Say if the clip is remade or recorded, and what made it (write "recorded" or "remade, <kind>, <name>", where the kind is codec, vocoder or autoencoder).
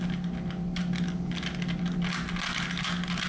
recorded